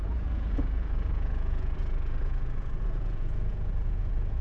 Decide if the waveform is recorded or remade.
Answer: remade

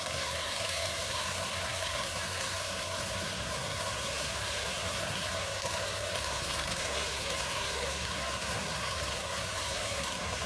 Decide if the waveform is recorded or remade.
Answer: remade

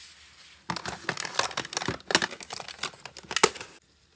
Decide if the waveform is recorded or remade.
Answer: recorded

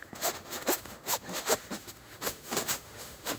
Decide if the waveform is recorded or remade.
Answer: remade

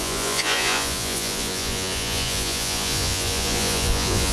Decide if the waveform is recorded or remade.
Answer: remade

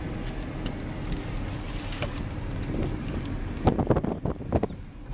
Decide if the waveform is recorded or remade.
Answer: recorded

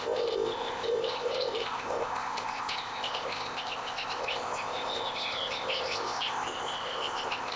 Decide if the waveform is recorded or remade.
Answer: remade